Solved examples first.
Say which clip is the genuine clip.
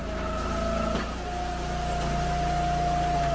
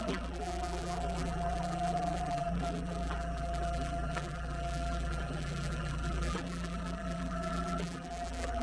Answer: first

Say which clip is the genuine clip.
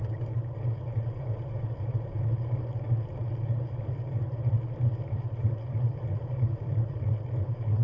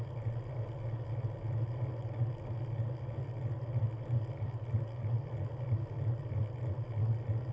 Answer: second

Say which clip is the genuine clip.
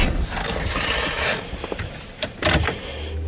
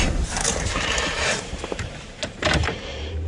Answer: first